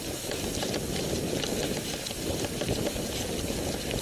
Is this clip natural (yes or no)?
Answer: yes